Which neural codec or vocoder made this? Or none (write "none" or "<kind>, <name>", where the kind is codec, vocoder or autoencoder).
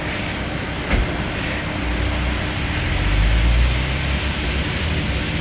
none